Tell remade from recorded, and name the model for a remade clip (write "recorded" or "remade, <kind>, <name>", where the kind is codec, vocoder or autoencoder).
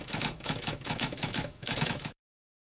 remade, autoencoder, DAC-VAE